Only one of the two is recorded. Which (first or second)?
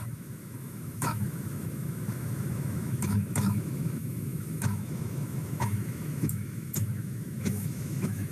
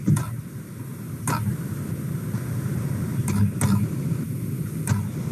second